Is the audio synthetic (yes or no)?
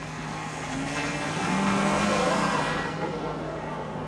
yes